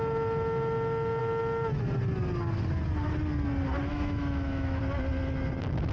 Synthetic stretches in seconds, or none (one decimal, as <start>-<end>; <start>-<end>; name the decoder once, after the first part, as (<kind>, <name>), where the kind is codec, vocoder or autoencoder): 3.9-4.8 (autoencoder, DAC-VAE)